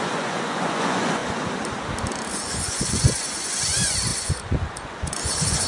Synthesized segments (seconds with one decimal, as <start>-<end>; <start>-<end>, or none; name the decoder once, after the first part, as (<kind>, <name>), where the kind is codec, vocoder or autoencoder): 0.0-1.2 (vocoder, Vocos); 2.3-5.7